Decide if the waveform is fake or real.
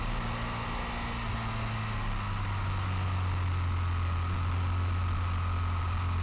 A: real